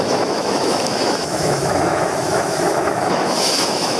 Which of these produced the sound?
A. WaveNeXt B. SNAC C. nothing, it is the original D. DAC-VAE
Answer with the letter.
D